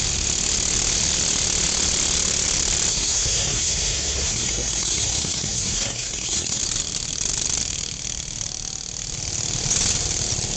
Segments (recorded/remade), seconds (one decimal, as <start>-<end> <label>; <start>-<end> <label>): 0.0-2.9 recorded; 2.9-6.6 remade; 6.6-10.6 recorded